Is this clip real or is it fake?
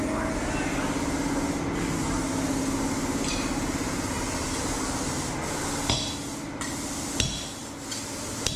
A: real